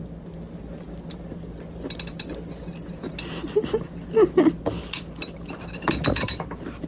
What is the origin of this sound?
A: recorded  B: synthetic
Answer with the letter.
A